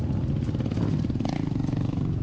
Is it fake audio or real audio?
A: real